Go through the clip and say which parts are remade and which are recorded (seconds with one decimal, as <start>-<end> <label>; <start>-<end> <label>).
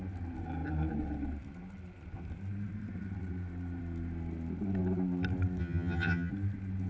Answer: 0.0-5.6 recorded; 5.6-6.3 remade; 6.3-6.9 recorded